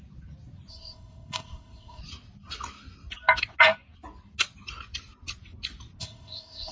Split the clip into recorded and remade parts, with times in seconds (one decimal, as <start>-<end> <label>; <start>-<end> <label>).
0.0-0.7 recorded; 0.7-2.0 remade; 2.0-6.0 recorded; 6.0-6.7 remade